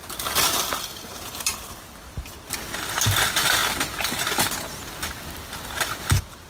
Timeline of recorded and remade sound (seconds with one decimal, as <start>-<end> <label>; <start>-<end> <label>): 0.0-6.5 recorded